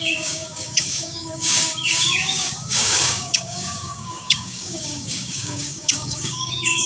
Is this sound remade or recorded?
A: remade